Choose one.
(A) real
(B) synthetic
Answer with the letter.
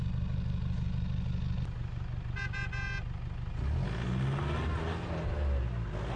A